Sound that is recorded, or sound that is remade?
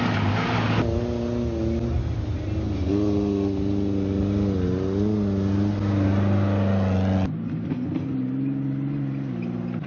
recorded